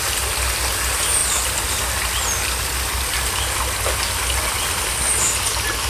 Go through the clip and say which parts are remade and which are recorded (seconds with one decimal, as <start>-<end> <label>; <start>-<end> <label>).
0.0-5.9 recorded